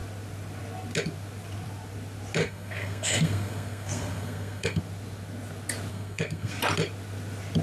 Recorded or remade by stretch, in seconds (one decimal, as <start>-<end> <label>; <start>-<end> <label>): 0.0-2.4 recorded; 2.4-4.8 remade; 4.8-5.9 recorded; 5.9-6.6 remade; 6.6-7.6 recorded